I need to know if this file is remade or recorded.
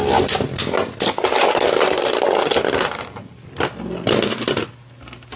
recorded